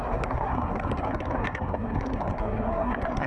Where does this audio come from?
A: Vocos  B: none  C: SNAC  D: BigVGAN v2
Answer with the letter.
C